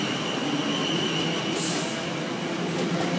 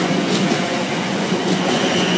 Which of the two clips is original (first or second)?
first